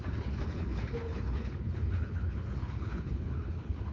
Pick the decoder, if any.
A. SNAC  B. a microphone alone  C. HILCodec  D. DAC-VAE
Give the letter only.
C